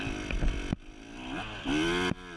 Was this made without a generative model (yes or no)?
yes